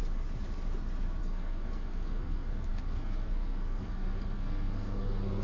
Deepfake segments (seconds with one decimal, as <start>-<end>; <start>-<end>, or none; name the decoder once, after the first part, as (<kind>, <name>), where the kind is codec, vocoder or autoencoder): 1.2-5.4 (codec, SNAC)